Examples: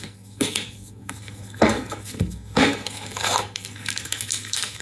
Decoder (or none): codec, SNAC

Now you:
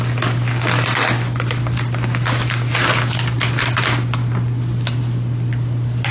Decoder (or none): none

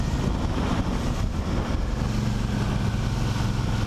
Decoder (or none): none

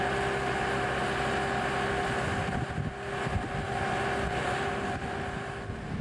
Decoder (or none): none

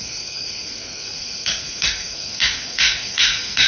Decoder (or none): codec, SNAC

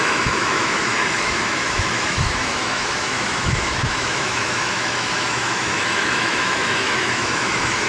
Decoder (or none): autoencoder, DAC-VAE